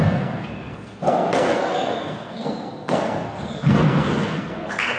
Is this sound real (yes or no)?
no